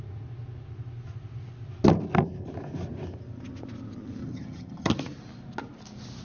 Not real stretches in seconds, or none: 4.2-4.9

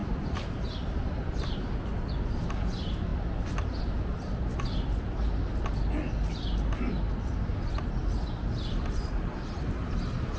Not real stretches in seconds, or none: none

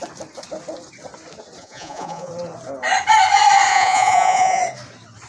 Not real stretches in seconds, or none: 1.6-2.3; 3.7-4.6